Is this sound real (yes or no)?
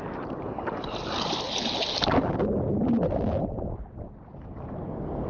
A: yes